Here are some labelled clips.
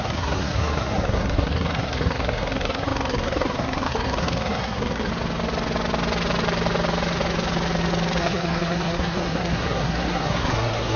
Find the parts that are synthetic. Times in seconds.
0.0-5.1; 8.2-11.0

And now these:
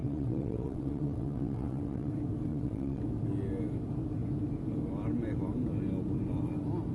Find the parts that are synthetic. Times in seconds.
0.0-2.1; 2.5-3.0